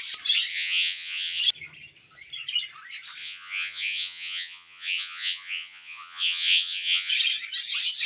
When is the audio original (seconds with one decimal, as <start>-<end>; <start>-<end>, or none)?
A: 0.0-0.5; 1.4-3.2; 7.1-8.1